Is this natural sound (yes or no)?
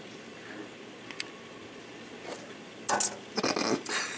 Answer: yes